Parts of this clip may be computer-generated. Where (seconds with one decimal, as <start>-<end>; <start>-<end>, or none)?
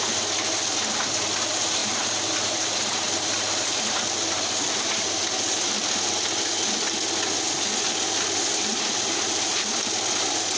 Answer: 1.8-4.7; 8.7-9.5